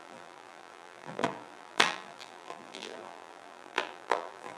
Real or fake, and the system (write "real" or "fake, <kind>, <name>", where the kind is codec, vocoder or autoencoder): fake, vocoder, BigVGAN v2